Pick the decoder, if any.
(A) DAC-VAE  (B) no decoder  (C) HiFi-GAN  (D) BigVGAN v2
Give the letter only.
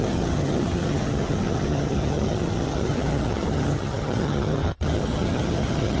C